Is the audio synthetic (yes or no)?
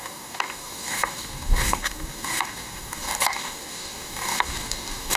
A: yes